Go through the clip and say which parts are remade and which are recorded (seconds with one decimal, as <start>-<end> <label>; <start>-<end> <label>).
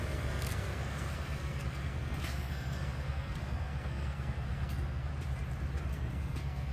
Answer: 0.0-5.1 remade; 5.1-5.9 recorded; 5.9-6.7 remade